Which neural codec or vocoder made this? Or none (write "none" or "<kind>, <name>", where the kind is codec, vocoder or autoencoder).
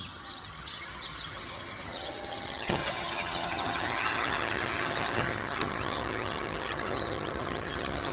vocoder, HiFi-GAN